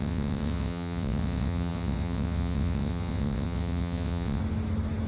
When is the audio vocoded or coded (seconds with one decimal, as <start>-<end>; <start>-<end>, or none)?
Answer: 0.0-4.4